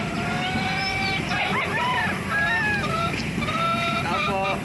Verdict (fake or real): real